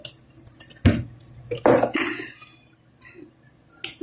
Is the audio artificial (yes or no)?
no